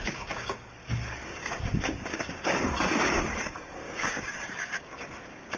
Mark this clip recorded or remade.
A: remade